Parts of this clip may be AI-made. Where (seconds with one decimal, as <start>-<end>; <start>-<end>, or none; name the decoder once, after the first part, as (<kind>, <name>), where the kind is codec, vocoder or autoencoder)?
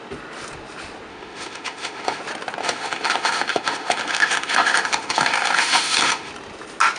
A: 1.1-2.2 (autoencoder, DAC-VAE); 2.6-6.3